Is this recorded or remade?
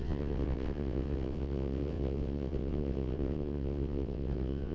remade